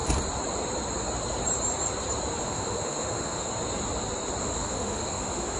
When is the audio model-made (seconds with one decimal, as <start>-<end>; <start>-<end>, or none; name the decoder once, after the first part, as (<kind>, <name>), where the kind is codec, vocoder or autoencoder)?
2.4-3.5 (autoencoder, DAC-VAE); 4.4-5.6